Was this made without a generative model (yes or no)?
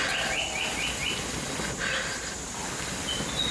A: yes